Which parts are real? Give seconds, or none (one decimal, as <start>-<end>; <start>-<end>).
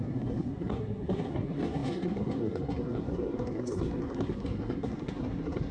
none